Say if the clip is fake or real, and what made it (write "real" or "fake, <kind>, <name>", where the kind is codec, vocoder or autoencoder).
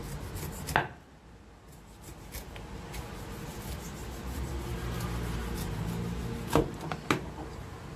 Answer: real